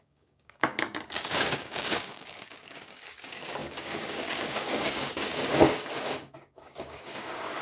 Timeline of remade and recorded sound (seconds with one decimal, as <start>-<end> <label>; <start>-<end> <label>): 0.0-7.6 remade